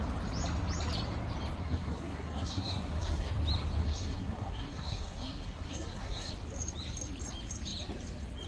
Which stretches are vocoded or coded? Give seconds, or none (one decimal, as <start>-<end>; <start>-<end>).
1.6-3.3; 3.8-6.3